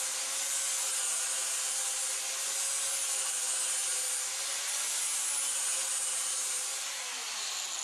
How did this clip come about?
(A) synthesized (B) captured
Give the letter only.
B